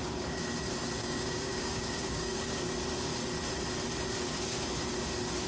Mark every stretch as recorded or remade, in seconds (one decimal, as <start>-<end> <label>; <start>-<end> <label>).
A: 0.0-1.0 recorded; 1.0-2.7 remade; 2.7-5.5 recorded

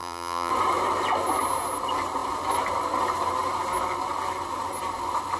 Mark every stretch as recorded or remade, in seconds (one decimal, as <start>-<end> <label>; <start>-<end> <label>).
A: 0.0-0.5 remade; 0.5-5.4 recorded

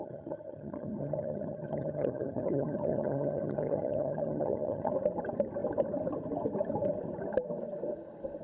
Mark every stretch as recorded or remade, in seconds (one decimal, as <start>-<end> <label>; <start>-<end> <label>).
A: 0.0-4.9 remade; 4.9-8.4 recorded

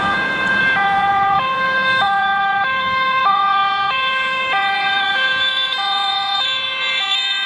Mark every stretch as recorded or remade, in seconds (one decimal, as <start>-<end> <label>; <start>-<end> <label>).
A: 0.0-7.5 remade

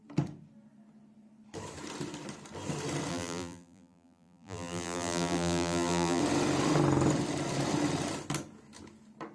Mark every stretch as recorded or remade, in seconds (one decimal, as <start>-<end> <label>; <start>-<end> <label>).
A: 0.0-3.1 recorded; 3.1-6.2 remade; 6.2-9.3 recorded

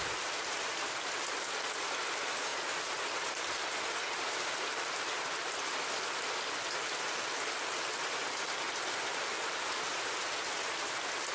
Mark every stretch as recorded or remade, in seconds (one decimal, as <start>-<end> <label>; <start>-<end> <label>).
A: 0.0-11.3 recorded